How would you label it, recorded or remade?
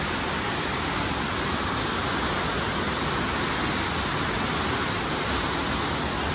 recorded